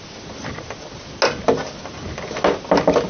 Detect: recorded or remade recorded